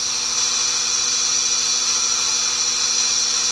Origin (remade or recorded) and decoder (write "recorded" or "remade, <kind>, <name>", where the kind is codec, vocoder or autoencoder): recorded